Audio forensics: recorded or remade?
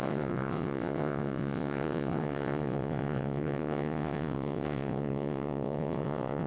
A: remade